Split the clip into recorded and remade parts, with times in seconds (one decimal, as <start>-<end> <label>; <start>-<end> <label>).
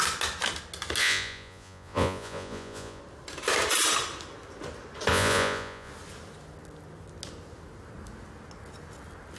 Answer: 0.0-1.0 recorded; 1.0-3.0 remade; 3.0-5.1 recorded; 5.1-5.9 remade; 5.9-9.4 recorded